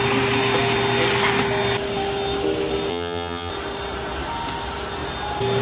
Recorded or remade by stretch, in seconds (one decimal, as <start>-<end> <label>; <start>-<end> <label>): 0.0-2.9 recorded; 2.9-3.5 remade; 3.5-5.6 recorded